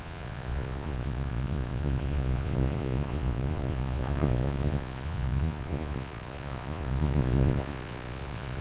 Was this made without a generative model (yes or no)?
no